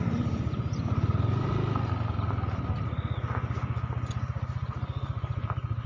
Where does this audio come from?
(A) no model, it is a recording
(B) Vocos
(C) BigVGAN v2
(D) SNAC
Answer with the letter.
A